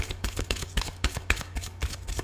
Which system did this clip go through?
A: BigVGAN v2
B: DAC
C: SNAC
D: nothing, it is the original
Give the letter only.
B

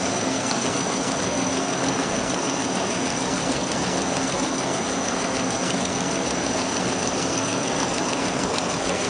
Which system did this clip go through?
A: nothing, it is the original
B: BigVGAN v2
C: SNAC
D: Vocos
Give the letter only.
C